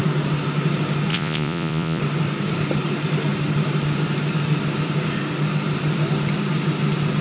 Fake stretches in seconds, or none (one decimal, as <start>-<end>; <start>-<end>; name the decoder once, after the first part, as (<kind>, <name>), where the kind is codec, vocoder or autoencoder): 1.1-2.0 (vocoder, Vocos)